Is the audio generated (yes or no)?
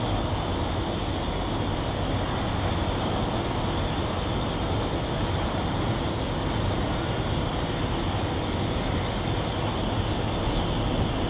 no